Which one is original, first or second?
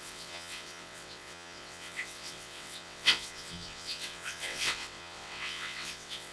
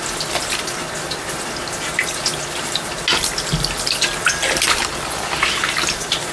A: second